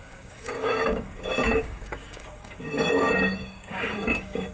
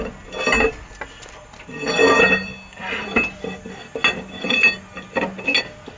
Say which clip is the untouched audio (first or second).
second